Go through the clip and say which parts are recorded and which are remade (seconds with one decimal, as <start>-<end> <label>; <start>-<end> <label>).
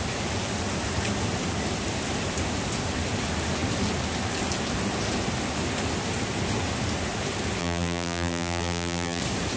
0.0-7.6 recorded; 7.6-9.2 remade; 9.2-9.6 recorded